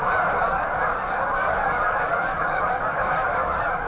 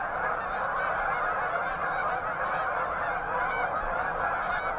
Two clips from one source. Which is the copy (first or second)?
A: first